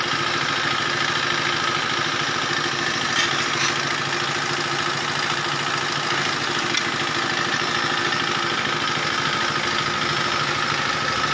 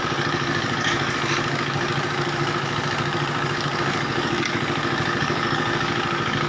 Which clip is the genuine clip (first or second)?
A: first